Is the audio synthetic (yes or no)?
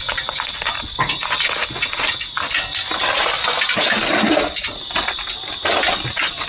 no